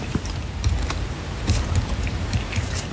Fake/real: fake